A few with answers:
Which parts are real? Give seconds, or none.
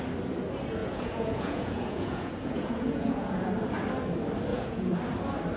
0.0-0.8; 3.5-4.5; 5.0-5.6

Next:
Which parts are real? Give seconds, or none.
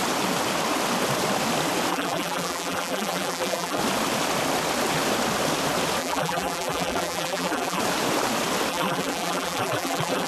0.0-1.9; 3.8-6.0; 7.8-8.7